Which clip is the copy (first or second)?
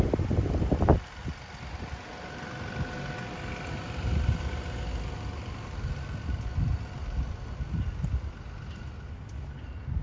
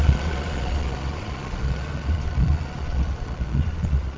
second